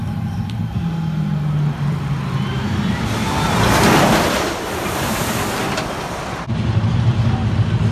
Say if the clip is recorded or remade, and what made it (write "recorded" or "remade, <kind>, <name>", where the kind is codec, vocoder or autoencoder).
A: recorded